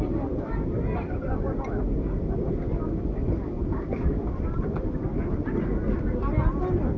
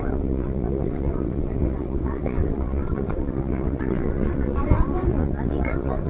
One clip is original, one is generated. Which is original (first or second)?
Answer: first